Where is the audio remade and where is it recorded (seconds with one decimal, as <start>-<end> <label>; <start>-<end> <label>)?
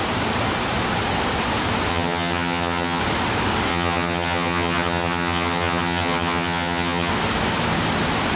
0.0-1.9 recorded; 1.9-3.0 remade; 3.0-3.7 recorded; 3.7-7.1 remade; 7.1-8.4 recorded